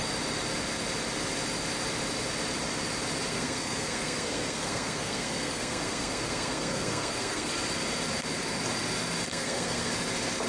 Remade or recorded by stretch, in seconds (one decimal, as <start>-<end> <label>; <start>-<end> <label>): 0.0-3.3 recorded; 3.3-7.5 remade; 7.5-9.3 recorded; 9.3-9.9 remade; 9.9-10.5 recorded